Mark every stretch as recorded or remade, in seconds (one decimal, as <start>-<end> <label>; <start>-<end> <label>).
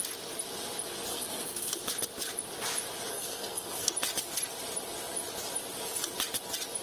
0.0-1.1 recorded; 1.1-1.7 remade; 1.7-3.1 recorded; 3.1-3.9 remade; 3.9-6.8 recorded